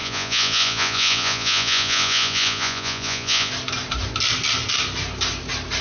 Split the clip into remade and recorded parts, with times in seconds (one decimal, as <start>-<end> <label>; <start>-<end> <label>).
0.0-3.5 remade; 3.5-5.8 recorded